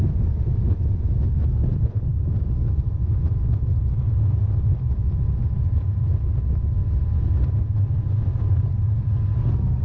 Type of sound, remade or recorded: recorded